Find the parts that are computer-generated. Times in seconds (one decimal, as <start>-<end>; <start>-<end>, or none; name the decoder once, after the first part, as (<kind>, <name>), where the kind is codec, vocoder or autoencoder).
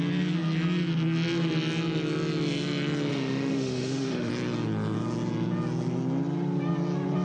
3.1-4.3 (autoencoder, DAC-VAE)